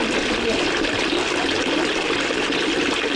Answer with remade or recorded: recorded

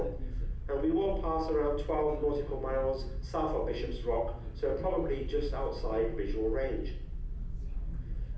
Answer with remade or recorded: recorded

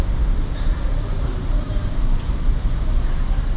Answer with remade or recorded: remade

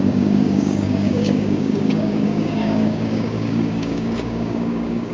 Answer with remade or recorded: remade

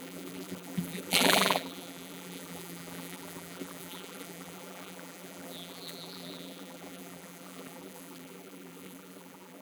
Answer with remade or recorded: remade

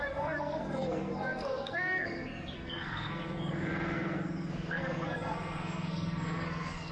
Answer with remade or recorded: remade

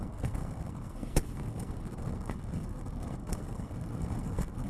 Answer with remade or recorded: remade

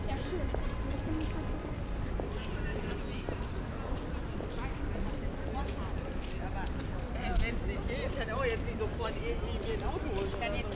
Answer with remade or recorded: recorded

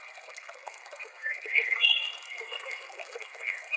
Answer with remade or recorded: remade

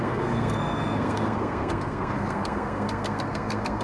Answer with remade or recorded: remade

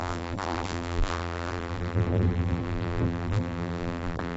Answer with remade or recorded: remade